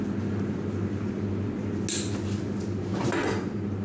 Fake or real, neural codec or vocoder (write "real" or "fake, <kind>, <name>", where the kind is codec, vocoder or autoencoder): real